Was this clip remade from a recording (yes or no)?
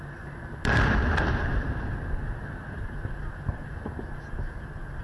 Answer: no